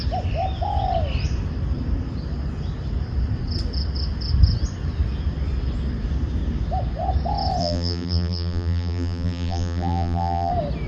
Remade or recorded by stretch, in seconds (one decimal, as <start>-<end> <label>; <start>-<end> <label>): 0.0-7.6 recorded; 7.6-10.5 remade; 10.5-10.9 recorded